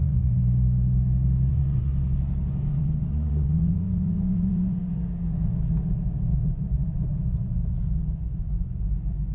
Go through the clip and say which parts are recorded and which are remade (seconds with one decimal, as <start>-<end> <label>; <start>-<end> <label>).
0.0-0.4 remade; 0.4-1.5 recorded; 1.5-1.9 remade; 1.9-2.7 recorded; 2.7-5.0 remade; 5.0-6.3 recorded; 6.3-9.3 remade